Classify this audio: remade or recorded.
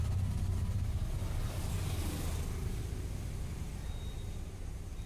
recorded